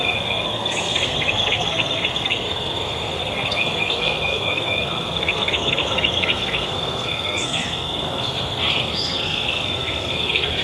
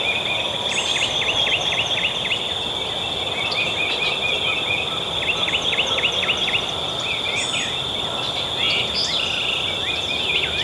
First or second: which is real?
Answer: second